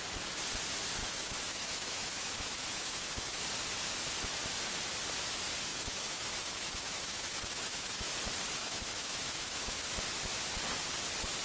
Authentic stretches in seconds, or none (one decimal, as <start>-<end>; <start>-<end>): 0.0-1.0; 3.4-5.7; 8.1-8.6; 9.9-11.4